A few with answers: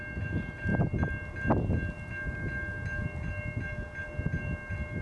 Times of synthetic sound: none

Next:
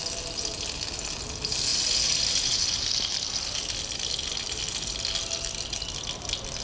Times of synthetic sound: none

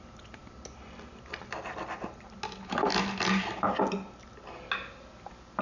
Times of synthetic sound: none